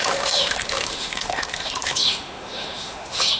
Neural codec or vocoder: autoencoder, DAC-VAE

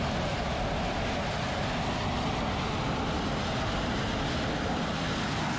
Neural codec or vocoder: none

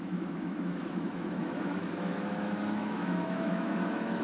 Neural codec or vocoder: autoencoder, DAC-VAE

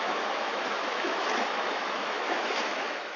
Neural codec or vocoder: autoencoder, DAC-VAE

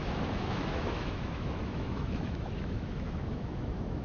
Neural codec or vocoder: autoencoder, DAC-VAE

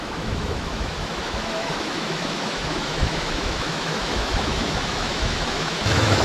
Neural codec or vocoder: autoencoder, DAC-VAE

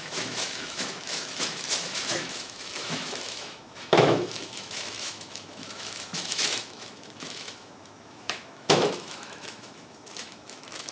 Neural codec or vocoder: autoencoder, DAC-VAE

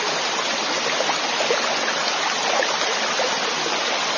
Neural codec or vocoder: none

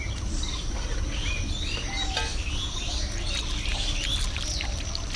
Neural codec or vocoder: none